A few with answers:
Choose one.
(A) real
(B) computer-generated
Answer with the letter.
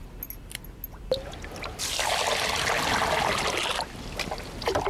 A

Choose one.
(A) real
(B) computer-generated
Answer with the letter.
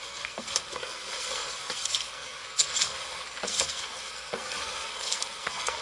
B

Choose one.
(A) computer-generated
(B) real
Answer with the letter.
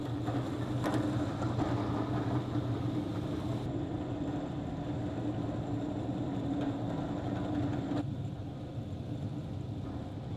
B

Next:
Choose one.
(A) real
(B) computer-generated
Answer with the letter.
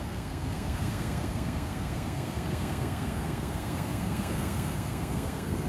B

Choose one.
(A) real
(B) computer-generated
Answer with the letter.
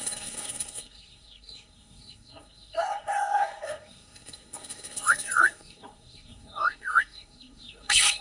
B